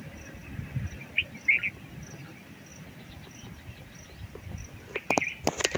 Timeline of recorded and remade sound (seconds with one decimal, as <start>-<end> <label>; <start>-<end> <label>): 0.0-5.8 recorded